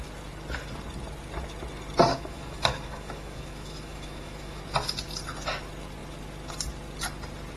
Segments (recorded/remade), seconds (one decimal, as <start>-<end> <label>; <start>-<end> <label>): 0.0-2.1 recorded; 2.1-4.6 remade; 4.6-7.6 recorded